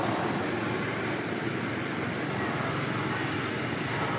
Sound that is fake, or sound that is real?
real